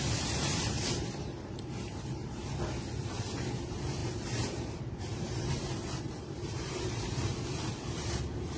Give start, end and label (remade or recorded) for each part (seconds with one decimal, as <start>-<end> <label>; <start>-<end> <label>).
0.0-2.4 remade; 2.4-3.0 recorded; 3.0-8.6 remade